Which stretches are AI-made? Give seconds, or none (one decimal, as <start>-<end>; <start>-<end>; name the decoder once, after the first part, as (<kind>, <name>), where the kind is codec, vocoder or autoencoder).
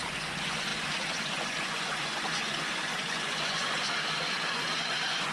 0.0-5.3 (vocoder, Vocos)